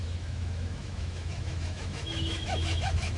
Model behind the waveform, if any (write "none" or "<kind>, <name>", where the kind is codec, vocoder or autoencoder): autoencoder, DAC-VAE